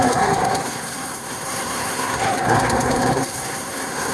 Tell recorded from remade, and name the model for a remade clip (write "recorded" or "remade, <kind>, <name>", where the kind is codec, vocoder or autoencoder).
remade, codec, SNAC